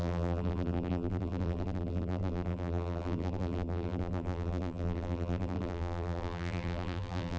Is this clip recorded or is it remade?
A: remade